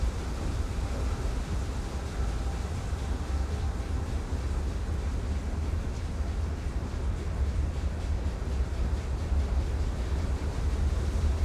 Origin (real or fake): real